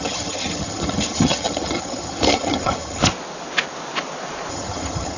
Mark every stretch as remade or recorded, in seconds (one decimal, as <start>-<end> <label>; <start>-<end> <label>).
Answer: 0.0-3.0 remade; 3.0-4.5 recorded; 4.5-5.2 remade